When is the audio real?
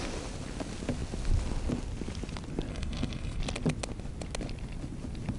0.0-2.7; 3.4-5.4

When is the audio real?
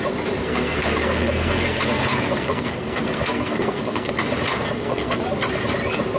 0.0-0.4; 4.1-4.5; 5.2-6.2